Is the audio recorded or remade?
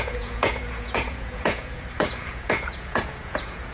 remade